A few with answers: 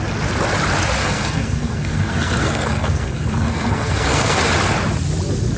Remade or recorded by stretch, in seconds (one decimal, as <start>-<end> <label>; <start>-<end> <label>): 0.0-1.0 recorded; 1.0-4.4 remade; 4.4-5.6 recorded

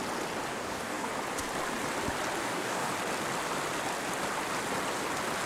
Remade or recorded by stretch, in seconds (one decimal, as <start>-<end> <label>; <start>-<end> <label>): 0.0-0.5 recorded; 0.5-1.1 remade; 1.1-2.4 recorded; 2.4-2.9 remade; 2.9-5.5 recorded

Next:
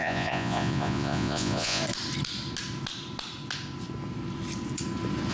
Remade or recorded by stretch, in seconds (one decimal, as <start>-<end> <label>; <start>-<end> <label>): 0.0-1.8 remade; 1.8-5.3 recorded

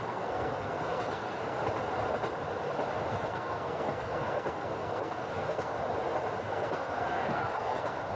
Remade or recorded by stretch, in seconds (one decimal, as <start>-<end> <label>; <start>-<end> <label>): 0.0-1.6 remade; 1.6-3.1 recorded; 3.1-5.7 remade; 5.7-6.4 recorded; 6.4-8.2 remade

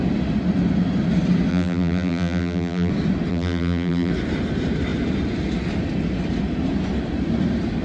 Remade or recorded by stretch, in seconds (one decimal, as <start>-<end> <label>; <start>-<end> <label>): 0.0-1.5 recorded; 1.5-2.9 remade; 2.9-3.3 recorded; 3.3-4.1 remade; 4.1-7.8 recorded

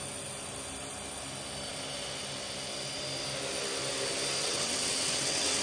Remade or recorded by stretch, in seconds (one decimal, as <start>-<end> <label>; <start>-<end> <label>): 0.0-4.4 recorded; 4.4-5.6 remade